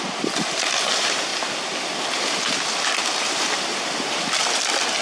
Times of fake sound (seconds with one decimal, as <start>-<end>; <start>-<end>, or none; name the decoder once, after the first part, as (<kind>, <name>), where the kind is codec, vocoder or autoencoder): none